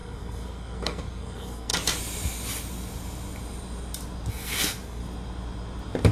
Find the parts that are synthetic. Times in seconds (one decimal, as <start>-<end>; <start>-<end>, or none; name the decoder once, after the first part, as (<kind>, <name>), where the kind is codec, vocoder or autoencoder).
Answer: 0.0-1.7 (codec, SNAC); 4.3-5.0